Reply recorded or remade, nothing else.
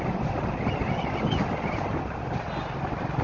recorded